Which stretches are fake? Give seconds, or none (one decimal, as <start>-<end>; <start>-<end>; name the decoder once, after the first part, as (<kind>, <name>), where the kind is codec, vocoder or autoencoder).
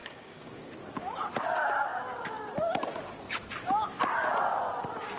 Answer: 0.0-0.7 (codec, DAC)